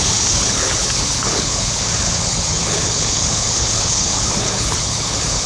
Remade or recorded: remade